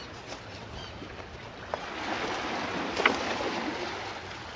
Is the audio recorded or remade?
recorded